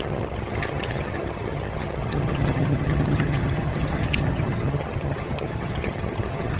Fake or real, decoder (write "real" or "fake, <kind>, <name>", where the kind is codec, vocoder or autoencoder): fake, vocoder, HiFi-GAN